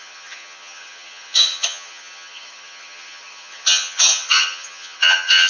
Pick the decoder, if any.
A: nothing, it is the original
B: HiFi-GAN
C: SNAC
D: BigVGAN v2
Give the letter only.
B